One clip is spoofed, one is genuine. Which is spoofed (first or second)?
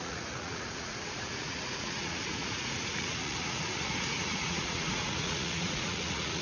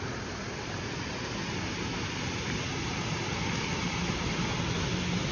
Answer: first